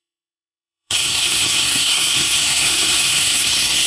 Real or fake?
fake